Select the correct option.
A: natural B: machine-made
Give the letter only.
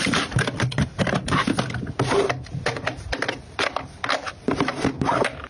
A